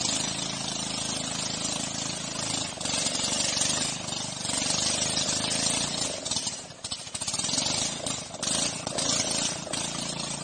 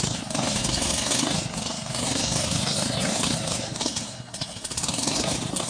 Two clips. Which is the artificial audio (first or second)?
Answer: second